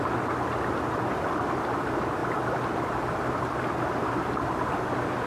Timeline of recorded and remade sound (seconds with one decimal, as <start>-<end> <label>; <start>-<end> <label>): 0.0-5.3 recorded